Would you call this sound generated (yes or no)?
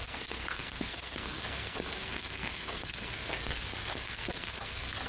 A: yes